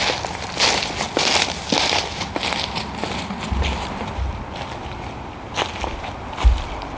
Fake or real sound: real